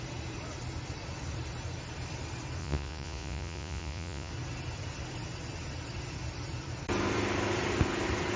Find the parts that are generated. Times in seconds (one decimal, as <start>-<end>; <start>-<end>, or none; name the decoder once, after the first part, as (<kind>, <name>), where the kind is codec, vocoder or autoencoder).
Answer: 2.6-4.3 (vocoder, Vocos)